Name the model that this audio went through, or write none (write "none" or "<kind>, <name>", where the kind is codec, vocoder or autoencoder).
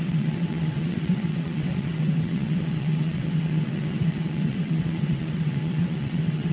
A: vocoder, WaveNeXt